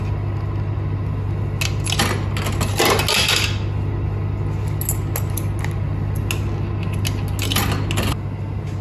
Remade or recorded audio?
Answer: recorded